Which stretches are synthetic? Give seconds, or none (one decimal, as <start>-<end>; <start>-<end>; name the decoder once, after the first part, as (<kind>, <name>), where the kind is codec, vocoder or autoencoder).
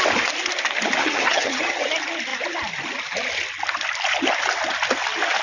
1.0-1.8 (vocoder, HiFi-GAN)